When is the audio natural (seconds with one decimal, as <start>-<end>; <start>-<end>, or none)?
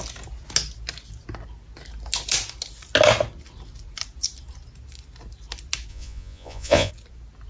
0.0-5.9; 6.9-7.5